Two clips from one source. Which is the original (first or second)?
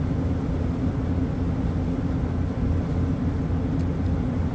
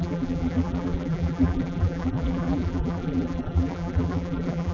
first